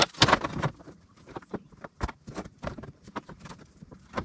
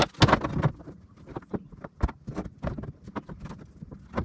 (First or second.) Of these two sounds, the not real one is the first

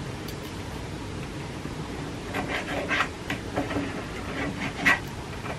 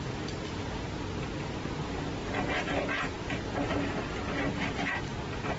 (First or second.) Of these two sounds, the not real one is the first